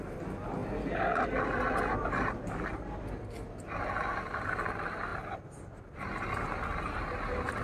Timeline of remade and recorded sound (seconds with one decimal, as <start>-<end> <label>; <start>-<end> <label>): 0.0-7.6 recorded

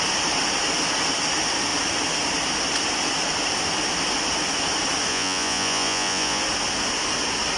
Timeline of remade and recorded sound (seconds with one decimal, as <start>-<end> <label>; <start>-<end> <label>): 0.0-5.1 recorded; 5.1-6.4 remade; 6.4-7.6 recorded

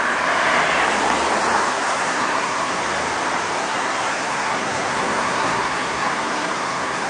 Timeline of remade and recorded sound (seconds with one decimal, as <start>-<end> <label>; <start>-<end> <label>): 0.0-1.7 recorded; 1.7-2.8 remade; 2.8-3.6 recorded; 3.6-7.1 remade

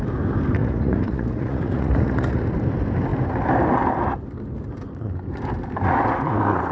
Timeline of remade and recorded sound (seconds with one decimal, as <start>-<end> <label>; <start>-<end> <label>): 0.0-0.6 recorded; 0.6-2.4 remade; 2.4-6.7 recorded